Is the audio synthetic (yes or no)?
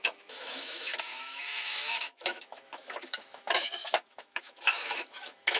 yes